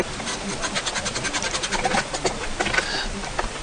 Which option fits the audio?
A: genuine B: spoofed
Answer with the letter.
A